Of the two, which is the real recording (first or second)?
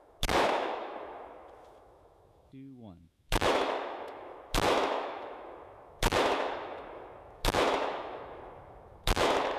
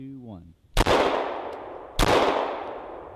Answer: second